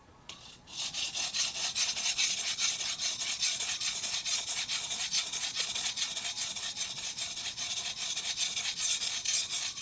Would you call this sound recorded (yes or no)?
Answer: no